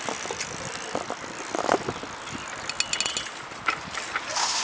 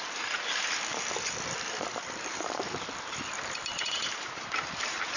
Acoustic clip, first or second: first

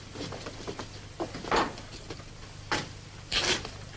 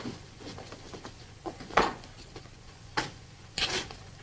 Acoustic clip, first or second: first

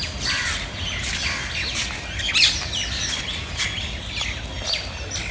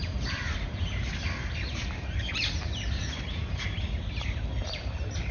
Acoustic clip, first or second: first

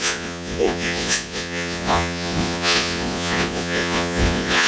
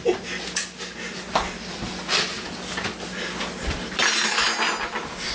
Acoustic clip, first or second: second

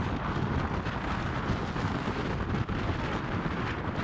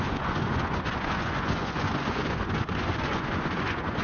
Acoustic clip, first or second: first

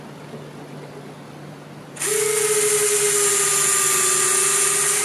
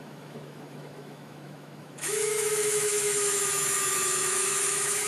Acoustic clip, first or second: first